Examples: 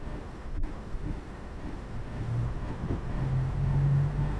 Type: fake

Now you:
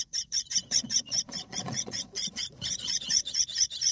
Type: fake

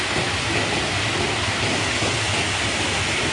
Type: real